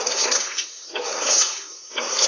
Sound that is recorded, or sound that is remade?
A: remade